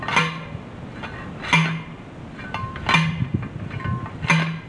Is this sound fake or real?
real